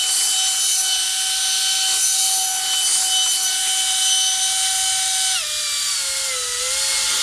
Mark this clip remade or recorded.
recorded